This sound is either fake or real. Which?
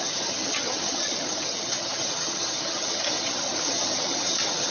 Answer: fake